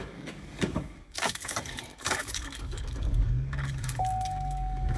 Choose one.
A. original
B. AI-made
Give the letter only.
B